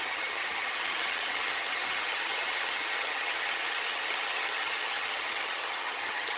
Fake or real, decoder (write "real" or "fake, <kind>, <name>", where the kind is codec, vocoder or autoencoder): fake, vocoder, HiFi-GAN